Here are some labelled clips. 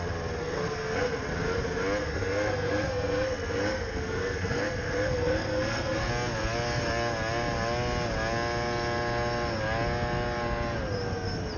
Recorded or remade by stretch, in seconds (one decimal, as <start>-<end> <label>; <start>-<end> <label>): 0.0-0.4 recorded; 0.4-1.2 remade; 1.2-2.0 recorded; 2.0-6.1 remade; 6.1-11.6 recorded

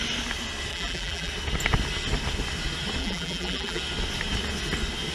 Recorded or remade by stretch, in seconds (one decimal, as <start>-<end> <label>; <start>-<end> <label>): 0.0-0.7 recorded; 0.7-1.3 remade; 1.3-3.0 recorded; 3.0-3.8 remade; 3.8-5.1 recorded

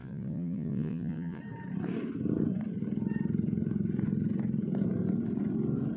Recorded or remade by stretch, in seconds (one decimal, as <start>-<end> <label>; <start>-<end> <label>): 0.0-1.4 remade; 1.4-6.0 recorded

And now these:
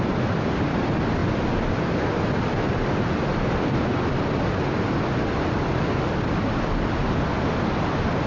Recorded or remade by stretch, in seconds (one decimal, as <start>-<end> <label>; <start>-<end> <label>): 0.0-8.3 recorded